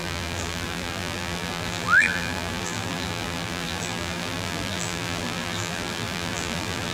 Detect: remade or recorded remade